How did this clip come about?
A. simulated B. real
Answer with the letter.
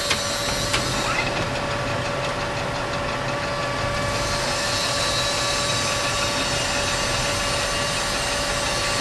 B